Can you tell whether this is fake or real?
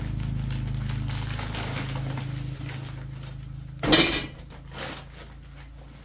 real